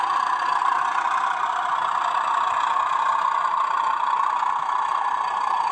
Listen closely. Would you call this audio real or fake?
real